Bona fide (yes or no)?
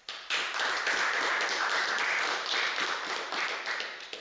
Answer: yes